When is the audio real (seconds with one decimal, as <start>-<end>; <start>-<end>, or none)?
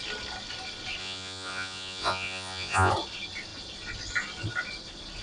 0.0-1.0; 2.9-5.2